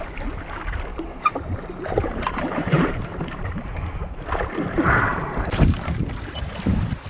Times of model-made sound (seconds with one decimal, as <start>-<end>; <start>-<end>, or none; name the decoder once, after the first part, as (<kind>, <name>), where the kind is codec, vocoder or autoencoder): 0.9-3.9 (vocoder, BigVGAN v2)

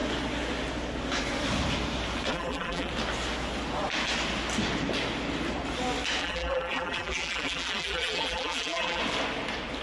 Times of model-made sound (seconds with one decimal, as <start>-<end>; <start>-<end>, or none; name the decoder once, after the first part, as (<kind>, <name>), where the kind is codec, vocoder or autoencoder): 2.3-2.9 (vocoder, BigVGAN v2); 6.2-9.0